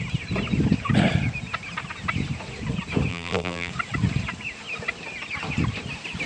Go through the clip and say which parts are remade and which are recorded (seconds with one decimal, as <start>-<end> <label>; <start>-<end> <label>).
0.0-3.1 recorded; 3.1-3.7 remade; 3.7-6.3 recorded

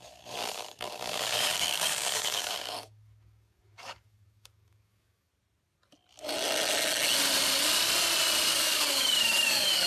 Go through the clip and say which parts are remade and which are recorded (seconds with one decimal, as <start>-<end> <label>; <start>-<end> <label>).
0.0-5.3 remade; 5.3-8.5 recorded; 8.5-9.9 remade

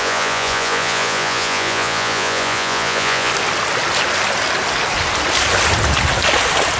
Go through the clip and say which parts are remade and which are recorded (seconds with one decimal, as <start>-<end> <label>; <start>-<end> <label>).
0.0-3.3 remade; 3.3-6.8 recorded

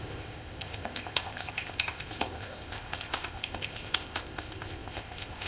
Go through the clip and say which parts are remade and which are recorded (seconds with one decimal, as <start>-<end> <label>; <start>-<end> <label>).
0.0-5.5 remade

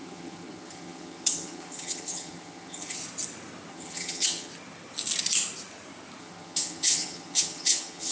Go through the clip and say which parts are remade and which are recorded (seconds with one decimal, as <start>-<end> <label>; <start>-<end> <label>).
0.0-3.0 remade; 3.0-3.7 recorded; 3.7-4.5 remade; 4.5-6.2 recorded; 6.2-8.1 remade

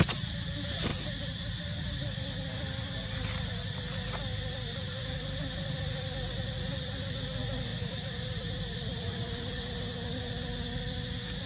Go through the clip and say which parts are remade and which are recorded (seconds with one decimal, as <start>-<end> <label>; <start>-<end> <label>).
0.0-7.7 recorded; 7.7-9.5 remade; 9.5-11.5 recorded

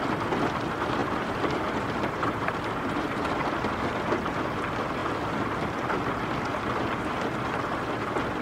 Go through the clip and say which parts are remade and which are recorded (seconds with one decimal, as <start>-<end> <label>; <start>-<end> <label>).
0.0-1.0 recorded; 1.0-4.3 remade; 4.3-8.4 recorded